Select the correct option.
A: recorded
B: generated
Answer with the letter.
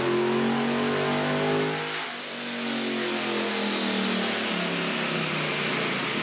A